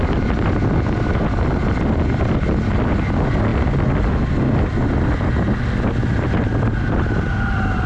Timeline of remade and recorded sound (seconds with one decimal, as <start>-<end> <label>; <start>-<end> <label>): 0.0-7.9 recorded